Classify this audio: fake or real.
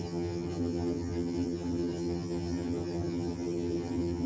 fake